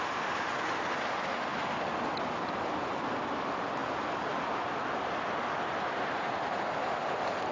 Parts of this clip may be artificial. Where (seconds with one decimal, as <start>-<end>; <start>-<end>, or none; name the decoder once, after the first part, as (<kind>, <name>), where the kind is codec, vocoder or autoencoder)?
1.5-2.1 (vocoder, BigVGAN v2)